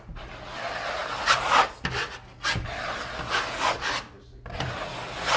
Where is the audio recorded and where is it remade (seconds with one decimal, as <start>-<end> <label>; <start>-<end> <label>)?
0.0-5.4 recorded